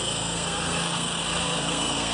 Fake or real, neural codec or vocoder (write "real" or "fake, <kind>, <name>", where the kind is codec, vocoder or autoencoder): fake, codec, SNAC